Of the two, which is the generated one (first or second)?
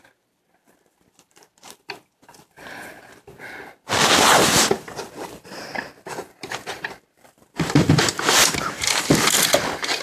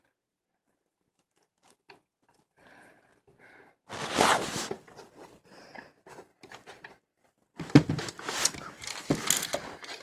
first